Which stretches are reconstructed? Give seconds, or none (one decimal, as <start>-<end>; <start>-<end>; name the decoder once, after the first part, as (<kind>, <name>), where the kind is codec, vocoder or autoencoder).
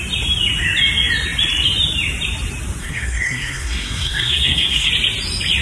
2.8-4.9 (codec, SNAC)